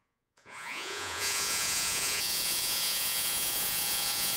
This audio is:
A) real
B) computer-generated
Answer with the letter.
B